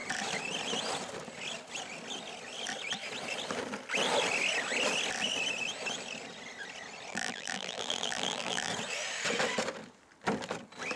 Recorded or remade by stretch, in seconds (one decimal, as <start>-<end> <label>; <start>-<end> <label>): 0.0-7.1 recorded; 7.1-8.7 remade; 8.7-11.0 recorded